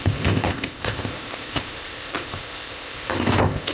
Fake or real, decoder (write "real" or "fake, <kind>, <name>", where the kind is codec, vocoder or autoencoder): fake, codec, ZipCodec